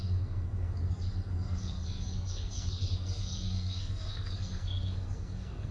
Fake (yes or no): yes